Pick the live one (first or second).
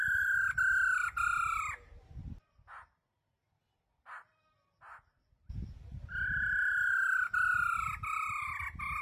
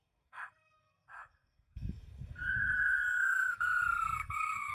first